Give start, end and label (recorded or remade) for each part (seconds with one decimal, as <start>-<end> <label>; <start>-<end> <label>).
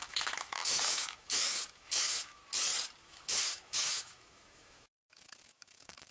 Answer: 0.0-2.4 remade; 2.4-3.0 recorded; 3.0-6.1 remade